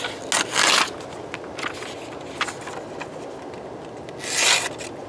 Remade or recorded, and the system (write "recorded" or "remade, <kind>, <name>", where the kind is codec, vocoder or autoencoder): recorded